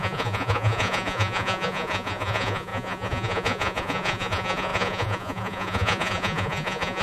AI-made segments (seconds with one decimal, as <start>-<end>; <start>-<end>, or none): 0.0-7.0